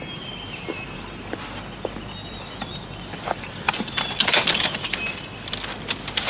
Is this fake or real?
real